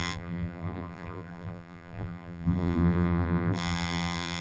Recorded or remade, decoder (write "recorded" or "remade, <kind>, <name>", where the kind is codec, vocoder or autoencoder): remade, vocoder, BigVGAN v2